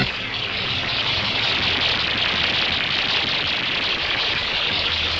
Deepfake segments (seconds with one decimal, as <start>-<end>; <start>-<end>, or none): 0.0-1.5; 3.9-5.2

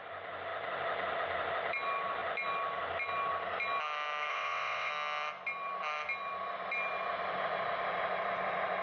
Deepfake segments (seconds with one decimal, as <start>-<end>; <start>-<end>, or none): 4.3-4.9

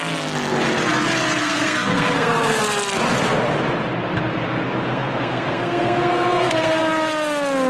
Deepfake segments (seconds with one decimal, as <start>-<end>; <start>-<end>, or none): 1.4-2.6; 4.9-6.8

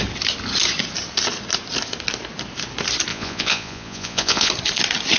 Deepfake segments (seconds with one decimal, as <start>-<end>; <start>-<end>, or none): 3.1-4.5

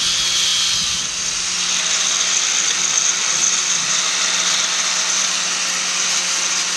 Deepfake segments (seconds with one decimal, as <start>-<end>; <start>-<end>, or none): none

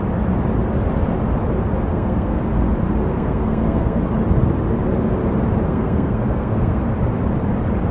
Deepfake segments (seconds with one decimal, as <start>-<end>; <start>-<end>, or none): 1.9-2.4; 3.1-4.0; 5.7-6.8